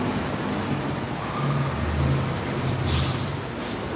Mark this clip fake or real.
real